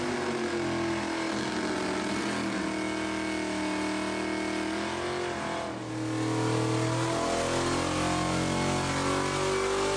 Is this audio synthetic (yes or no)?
no